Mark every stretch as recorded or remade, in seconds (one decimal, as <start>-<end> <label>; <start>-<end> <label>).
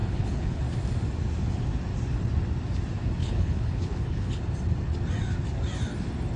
0.0-0.6 remade; 0.6-3.2 recorded; 3.2-4.4 remade; 4.4-6.4 recorded